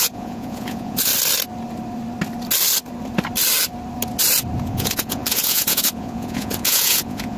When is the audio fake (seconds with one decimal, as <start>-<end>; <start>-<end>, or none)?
0.0-1.1; 4.6-7.4